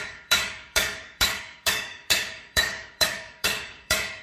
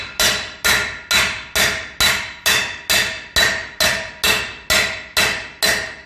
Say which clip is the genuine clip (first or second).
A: second